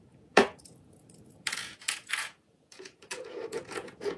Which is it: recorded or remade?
remade